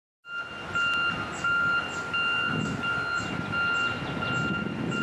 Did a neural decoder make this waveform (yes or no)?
no